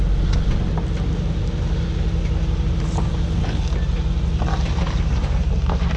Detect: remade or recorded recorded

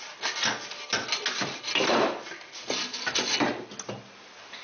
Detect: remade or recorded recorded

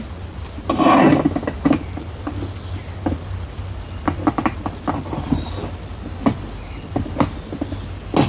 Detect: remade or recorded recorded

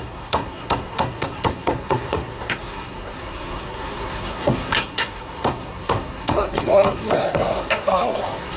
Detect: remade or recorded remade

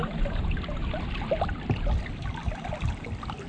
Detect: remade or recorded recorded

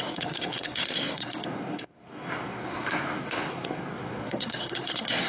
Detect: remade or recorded remade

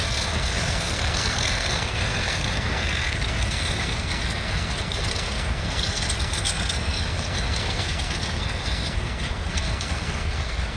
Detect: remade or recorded remade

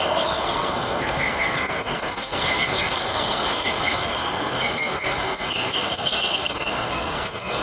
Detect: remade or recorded remade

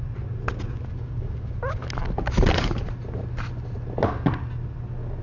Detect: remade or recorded recorded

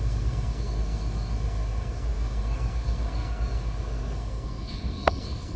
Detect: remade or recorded remade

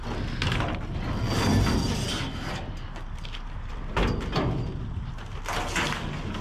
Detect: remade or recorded recorded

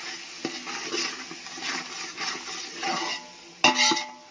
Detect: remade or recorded recorded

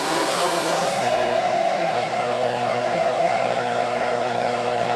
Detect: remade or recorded remade